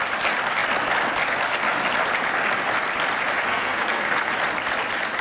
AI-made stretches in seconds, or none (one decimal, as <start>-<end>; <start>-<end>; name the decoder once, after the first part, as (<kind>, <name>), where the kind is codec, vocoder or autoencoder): 3.5-4.3 (codec, SNAC)